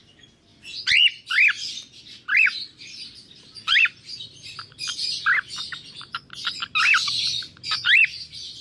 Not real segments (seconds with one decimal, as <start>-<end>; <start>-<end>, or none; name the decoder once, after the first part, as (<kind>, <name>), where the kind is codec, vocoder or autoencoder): none